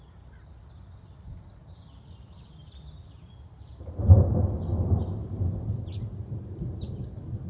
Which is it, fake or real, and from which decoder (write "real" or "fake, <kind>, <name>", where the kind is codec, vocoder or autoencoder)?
real